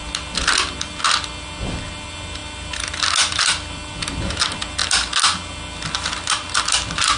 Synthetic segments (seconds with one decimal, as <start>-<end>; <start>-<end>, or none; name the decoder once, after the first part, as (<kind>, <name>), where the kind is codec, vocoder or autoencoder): none